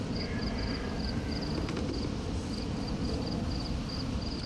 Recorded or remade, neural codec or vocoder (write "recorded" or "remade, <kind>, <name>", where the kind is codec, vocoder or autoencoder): recorded